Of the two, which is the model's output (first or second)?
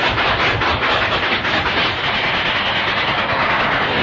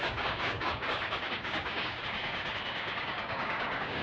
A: second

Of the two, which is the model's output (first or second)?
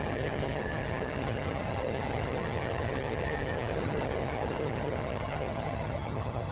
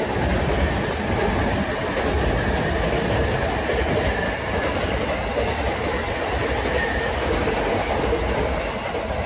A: first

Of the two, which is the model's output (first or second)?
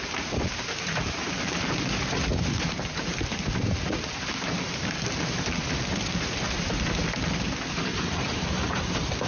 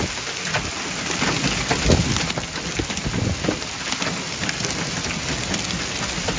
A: first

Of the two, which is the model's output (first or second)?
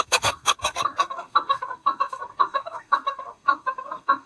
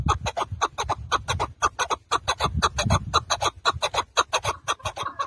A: first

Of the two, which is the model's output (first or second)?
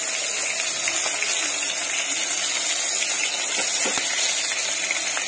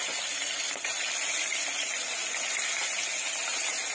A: second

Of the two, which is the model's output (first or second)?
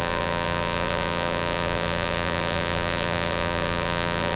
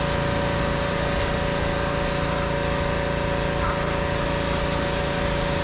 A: first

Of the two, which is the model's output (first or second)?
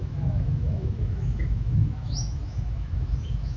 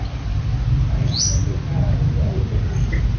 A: first